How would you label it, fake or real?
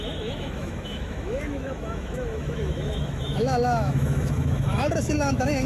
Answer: fake